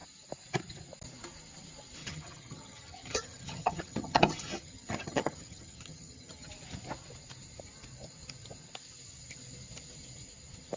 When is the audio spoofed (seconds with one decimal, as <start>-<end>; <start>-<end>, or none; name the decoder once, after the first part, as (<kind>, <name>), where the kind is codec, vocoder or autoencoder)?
2.0-6.5 (vocoder, HiFi-GAN)